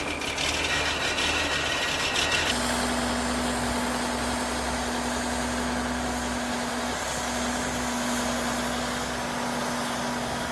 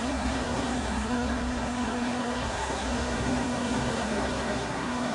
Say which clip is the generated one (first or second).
second